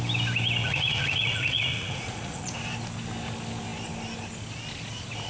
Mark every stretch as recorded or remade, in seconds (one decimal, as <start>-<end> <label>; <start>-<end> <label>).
0.0-0.6 recorded; 0.6-2.5 remade; 2.5-5.3 recorded